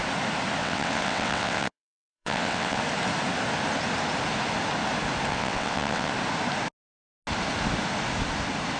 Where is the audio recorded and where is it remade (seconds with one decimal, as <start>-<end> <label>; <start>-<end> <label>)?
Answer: 0.0-0.6 recorded; 0.6-2.8 remade; 2.8-5.3 recorded; 5.3-6.1 remade; 6.1-8.8 recorded